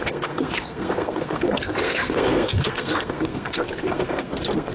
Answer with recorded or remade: remade